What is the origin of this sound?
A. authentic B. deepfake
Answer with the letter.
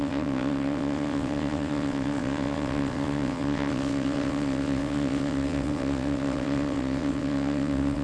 B